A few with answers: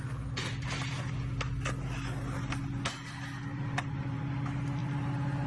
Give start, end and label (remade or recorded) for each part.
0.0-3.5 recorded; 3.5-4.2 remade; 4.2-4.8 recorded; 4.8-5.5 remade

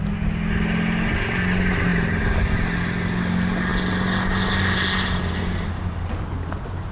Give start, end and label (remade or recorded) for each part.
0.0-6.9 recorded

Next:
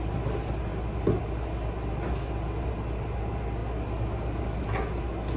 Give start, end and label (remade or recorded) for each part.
0.0-5.4 recorded